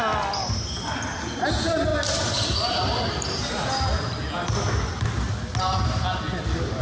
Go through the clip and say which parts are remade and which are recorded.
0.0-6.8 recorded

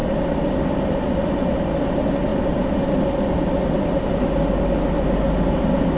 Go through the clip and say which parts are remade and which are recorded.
0.0-6.0 recorded

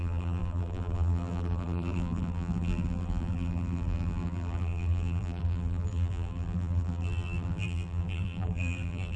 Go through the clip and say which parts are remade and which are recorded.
0.0-9.2 remade

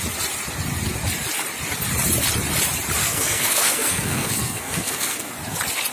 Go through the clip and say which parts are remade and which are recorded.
0.0-3.0 recorded; 3.0-5.3 remade; 5.3-5.9 recorded

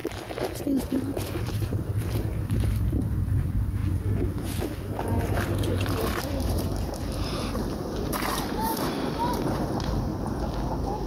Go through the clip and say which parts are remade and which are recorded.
0.0-0.6 recorded; 0.6-3.8 remade; 3.8-5.2 recorded; 5.2-10.1 remade; 10.1-11.1 recorded